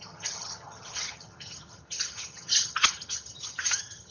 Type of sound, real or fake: fake